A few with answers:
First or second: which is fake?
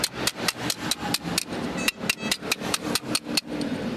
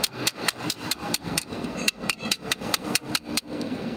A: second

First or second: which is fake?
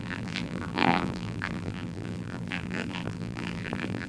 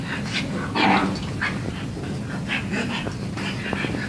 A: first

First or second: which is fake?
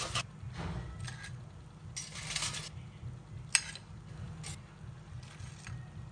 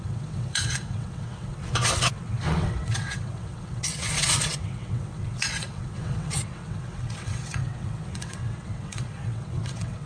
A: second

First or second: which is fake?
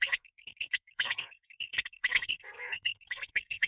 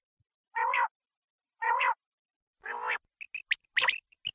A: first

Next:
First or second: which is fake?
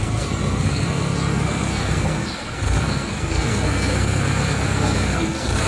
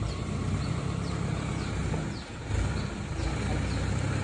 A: first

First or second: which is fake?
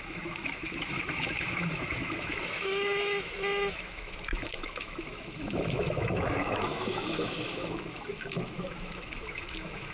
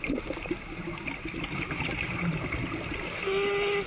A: first